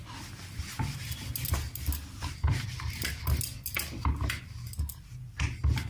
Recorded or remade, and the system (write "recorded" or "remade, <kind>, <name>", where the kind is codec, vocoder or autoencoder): recorded